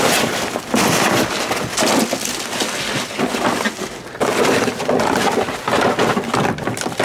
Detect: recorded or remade recorded